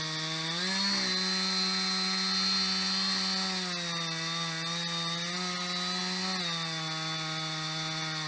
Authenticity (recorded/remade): recorded